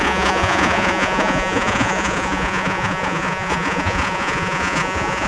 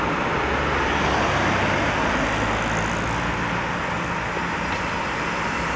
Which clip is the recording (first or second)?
second